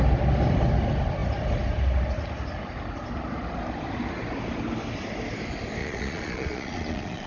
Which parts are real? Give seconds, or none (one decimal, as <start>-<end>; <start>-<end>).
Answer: 0.0-5.8